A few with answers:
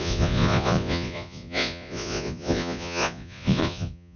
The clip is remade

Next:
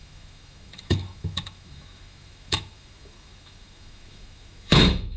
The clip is remade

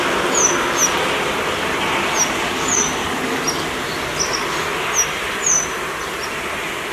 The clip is recorded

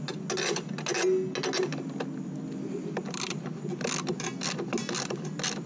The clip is recorded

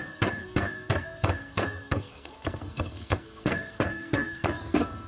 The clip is remade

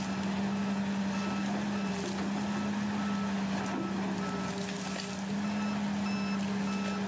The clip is recorded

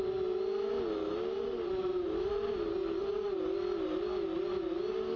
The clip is recorded